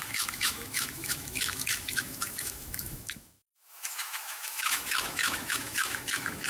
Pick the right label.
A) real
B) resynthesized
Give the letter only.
B